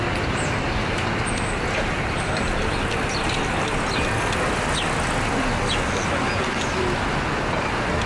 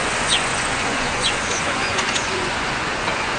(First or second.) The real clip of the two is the first